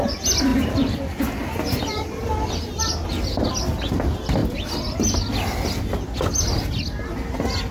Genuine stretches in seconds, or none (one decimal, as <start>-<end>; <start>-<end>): 0.0-7.7

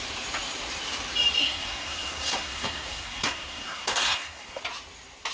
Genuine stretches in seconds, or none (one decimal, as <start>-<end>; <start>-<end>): 0.0-1.4; 4.6-5.3

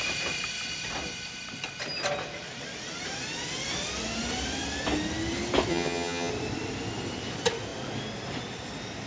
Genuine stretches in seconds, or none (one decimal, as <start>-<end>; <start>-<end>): 0.0-5.7; 6.3-9.1

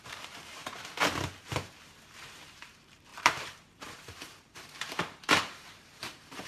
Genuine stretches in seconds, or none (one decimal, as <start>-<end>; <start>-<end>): 0.6-1.5

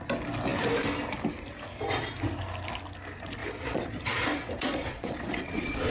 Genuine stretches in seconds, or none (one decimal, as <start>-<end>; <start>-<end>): 0.0-3.4

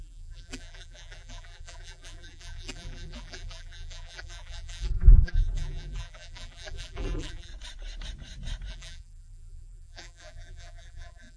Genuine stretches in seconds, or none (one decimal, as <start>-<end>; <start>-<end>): 7.5-8.7

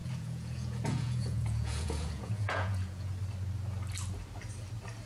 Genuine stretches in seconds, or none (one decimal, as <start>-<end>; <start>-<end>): 3.1-5.1

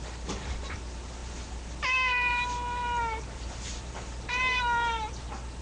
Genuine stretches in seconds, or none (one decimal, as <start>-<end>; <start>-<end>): 0.0-5.6